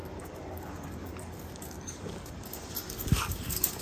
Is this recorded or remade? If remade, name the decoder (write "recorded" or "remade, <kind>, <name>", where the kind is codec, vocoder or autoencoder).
remade, codec, DAC